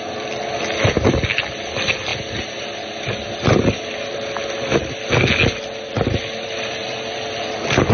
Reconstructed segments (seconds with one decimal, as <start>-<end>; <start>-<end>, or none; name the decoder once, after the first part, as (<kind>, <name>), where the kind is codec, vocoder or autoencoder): none